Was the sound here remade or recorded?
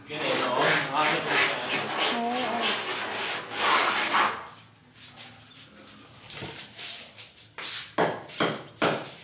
recorded